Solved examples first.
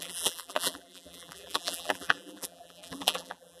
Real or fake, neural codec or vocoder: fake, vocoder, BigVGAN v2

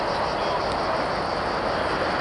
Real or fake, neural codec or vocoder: real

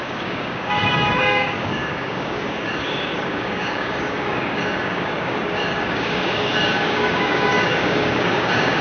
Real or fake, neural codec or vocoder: fake, codec, DAC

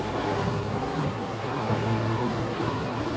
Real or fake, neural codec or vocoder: fake, codec, SNAC